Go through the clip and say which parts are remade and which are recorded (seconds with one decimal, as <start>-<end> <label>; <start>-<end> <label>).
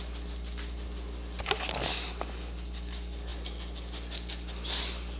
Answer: 0.0-5.2 recorded